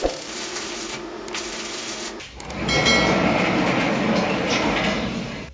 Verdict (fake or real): real